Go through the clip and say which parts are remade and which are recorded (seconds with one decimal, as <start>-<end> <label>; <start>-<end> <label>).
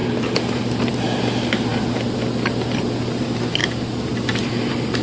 0.0-0.9 remade; 0.9-3.6 recorded; 3.6-4.6 remade; 4.6-5.0 recorded